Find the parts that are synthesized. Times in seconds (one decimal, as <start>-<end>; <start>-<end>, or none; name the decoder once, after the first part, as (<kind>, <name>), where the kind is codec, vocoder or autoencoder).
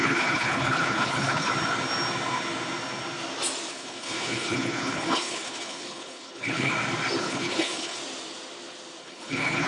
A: 0.0-1.5 (codec, HILCodec); 3.7-6.7; 7.2-8.0; 9.0-9.7